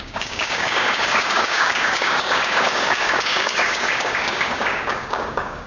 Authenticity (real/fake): fake